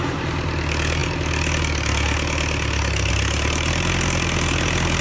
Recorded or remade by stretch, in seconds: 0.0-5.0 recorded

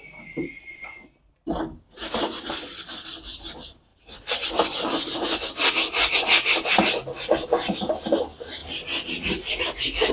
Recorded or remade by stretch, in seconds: 0.0-10.1 recorded

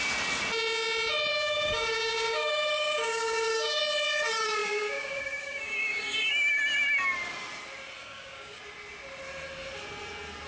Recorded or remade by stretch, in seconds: 0.0-1.3 recorded; 1.3-3.8 remade; 3.8-4.6 recorded; 4.6-6.6 remade; 6.6-8.0 recorded; 8.0-8.6 remade; 8.6-10.5 recorded

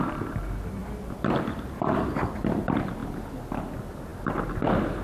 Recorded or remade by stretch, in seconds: 0.0-5.0 recorded